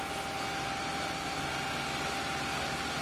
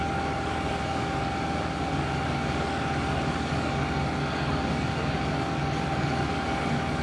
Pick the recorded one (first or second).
first